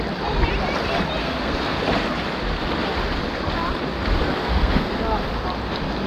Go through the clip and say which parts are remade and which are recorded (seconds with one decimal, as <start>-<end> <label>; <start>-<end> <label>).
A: 0.0-1.2 recorded; 1.2-1.8 remade; 1.8-4.4 recorded; 4.4-5.0 remade; 5.0-6.1 recorded